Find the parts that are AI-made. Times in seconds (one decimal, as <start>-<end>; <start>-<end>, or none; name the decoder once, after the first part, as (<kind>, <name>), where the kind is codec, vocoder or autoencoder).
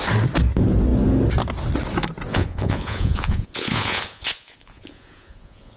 2.3-5.8 (vocoder, Vocos)